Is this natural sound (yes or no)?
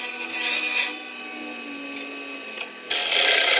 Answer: yes